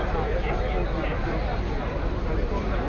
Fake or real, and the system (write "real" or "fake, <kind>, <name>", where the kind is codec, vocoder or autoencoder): real